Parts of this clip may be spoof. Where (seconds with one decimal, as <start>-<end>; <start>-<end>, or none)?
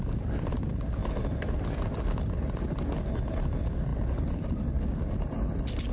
none